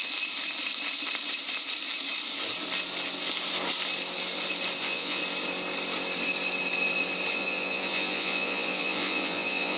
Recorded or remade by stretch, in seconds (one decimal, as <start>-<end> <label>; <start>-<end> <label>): 0.0-4.8 recorded; 4.8-5.2 remade; 5.2-7.3 recorded; 7.3-9.8 remade